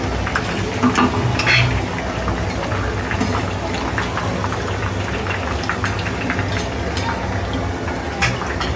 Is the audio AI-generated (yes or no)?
no